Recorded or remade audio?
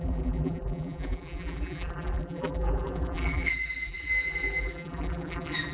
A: remade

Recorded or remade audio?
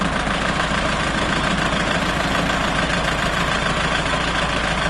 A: remade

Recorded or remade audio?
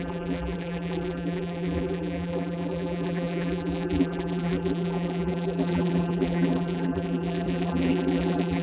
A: remade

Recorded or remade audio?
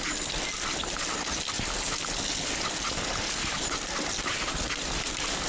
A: recorded